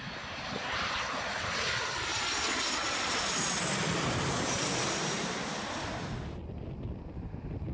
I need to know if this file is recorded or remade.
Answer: recorded